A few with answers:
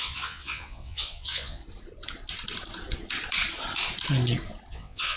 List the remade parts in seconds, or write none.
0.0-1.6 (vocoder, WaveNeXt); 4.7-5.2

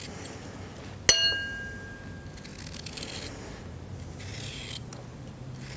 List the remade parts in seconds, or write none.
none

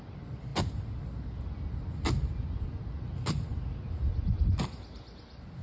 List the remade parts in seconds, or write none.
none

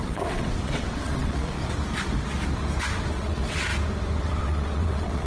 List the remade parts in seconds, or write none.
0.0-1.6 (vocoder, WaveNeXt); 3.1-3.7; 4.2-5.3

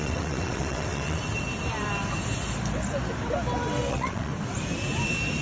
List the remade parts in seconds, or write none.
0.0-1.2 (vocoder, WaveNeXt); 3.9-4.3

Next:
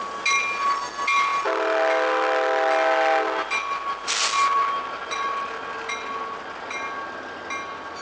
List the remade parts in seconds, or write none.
none

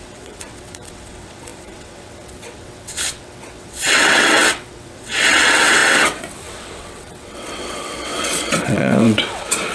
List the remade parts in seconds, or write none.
0.0-9.7 (vocoder, WaveNeXt)